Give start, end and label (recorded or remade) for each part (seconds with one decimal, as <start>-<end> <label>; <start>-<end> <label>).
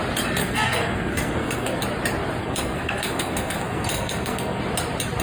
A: 0.0-0.4 recorded; 0.4-1.8 remade; 1.8-2.4 recorded; 2.4-4.6 remade; 4.6-5.2 recorded